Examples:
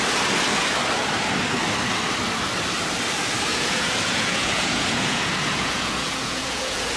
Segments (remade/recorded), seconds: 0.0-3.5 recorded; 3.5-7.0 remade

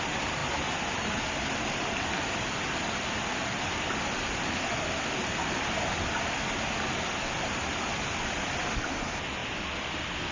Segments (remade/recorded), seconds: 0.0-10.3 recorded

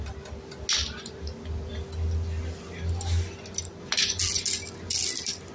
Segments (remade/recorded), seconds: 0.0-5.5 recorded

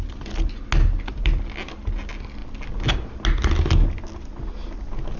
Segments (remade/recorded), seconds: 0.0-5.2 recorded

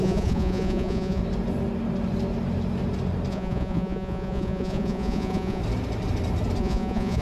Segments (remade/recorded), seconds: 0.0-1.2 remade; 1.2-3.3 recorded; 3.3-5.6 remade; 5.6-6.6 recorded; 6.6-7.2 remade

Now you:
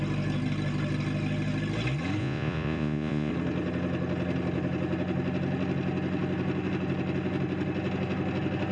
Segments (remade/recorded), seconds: 0.0-2.2 recorded; 2.2-3.3 remade; 3.3-8.7 recorded

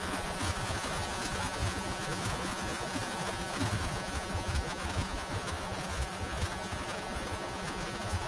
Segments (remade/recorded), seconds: 0.0-8.3 remade

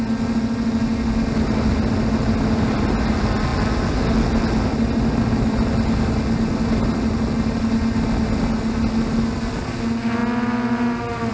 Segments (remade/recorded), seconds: 0.0-11.3 recorded